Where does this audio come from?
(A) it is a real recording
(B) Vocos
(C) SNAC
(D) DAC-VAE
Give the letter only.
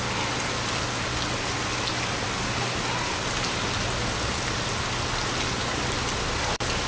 A